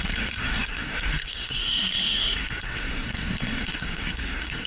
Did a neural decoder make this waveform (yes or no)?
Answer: yes